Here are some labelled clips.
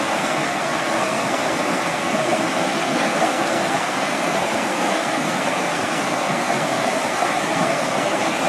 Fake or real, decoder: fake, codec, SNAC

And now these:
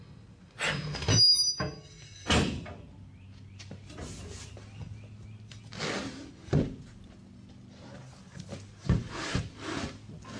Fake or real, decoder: real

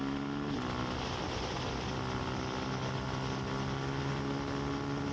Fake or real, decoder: real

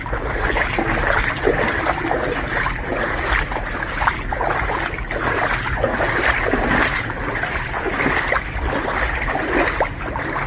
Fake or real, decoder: real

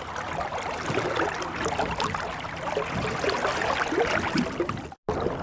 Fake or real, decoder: real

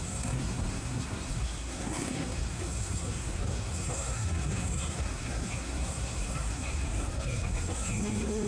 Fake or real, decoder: fake, codec, SNAC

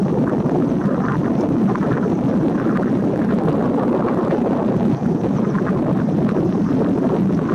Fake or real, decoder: real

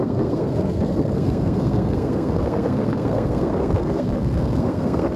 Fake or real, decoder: fake, codec, SNAC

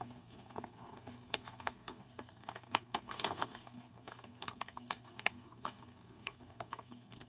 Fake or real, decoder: fake, codec, SNAC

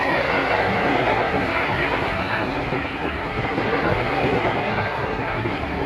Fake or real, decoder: fake, codec, SNAC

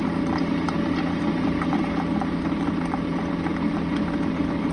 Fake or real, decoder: real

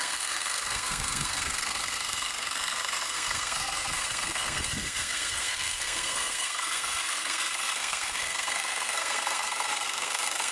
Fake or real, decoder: fake, codec, SNAC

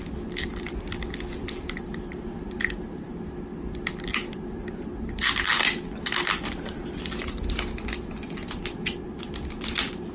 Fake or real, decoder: real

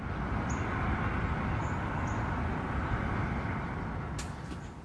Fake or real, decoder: real